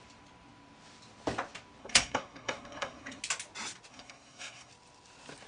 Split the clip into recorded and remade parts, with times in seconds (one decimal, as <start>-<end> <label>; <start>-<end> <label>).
0.0-1.8 recorded; 1.8-3.2 remade; 3.2-3.9 recorded; 3.9-4.7 remade; 4.7-5.5 recorded